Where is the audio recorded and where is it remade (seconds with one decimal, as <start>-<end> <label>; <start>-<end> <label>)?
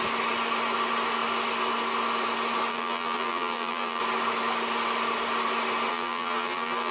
0.0-2.7 recorded; 2.7-4.0 remade; 4.0-5.9 recorded; 5.9-6.9 remade